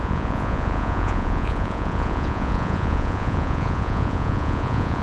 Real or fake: fake